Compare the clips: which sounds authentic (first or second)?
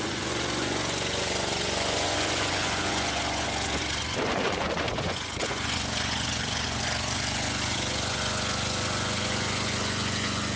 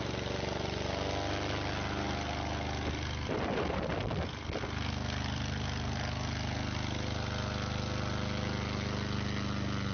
second